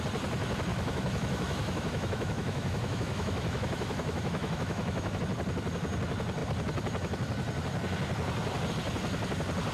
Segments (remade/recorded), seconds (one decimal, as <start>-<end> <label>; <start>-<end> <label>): 0.0-0.7 recorded; 0.7-5.2 remade; 5.2-9.7 recorded